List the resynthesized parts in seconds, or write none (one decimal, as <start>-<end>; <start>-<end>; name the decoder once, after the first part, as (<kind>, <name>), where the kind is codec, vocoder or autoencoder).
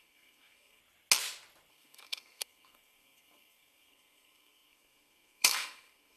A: 0.0-0.8 (codec, SNAC); 1.7-6.2